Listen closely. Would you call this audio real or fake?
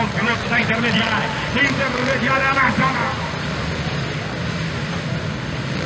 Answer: real